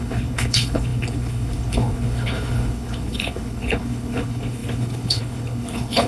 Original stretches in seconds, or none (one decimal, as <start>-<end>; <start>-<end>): none